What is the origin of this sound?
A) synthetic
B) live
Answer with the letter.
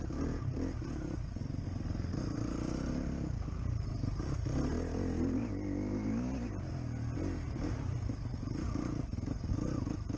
B